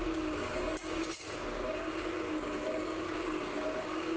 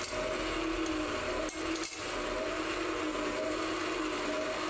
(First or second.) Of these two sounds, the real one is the second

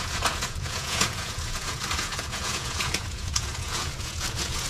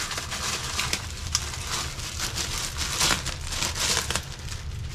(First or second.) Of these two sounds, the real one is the second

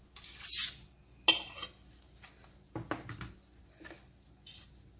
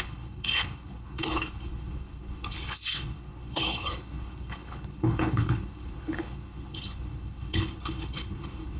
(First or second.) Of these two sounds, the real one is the first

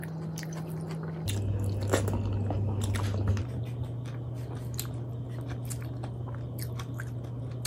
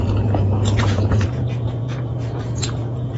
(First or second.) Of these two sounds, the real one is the first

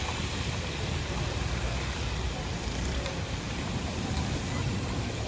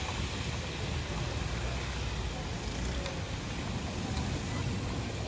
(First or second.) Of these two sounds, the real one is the second